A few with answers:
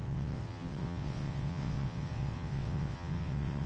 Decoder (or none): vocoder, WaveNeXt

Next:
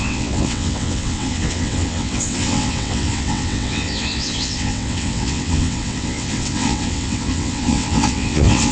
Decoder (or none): vocoder, WaveNeXt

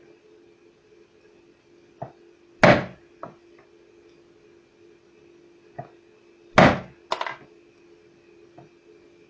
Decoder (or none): none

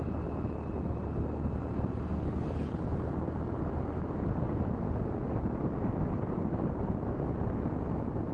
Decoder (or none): none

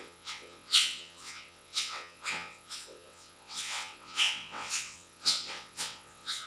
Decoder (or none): vocoder, WaveNeXt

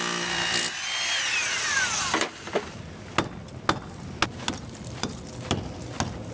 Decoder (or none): none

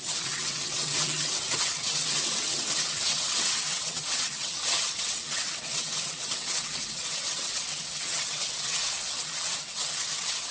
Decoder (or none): vocoder, WaveNeXt